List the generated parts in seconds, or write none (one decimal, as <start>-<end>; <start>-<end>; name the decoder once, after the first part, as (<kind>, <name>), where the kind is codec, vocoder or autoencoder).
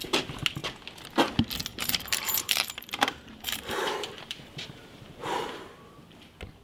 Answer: 1.7-5.7 (vocoder, BigVGAN v2)